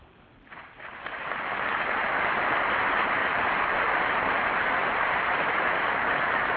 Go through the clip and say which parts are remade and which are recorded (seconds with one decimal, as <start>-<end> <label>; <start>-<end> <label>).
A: 0.0-6.6 recorded